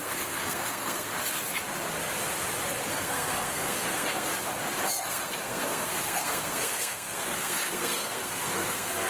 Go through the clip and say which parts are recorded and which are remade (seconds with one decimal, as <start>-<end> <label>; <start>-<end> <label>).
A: 0.0-1.1 remade; 1.1-2.9 recorded; 2.9-4.3 remade; 4.3-4.9 recorded; 4.9-9.1 remade